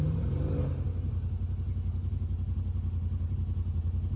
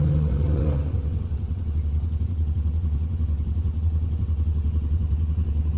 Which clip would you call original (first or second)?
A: first